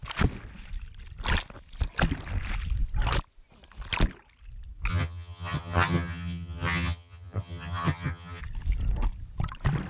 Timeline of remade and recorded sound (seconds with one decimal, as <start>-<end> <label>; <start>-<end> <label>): 0.0-4.9 recorded; 4.9-8.4 remade; 8.4-9.9 recorded